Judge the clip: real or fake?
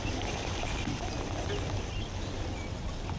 real